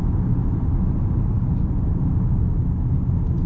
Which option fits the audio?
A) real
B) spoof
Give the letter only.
B